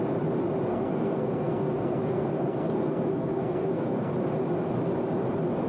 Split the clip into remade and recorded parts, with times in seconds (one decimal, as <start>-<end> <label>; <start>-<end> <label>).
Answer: 0.0-0.7 recorded; 0.7-4.1 remade; 4.1-5.7 recorded